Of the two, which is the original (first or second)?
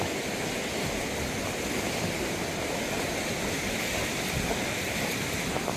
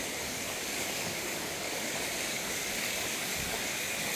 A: first